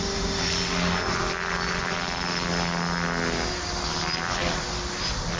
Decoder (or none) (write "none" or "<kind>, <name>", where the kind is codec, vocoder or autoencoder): none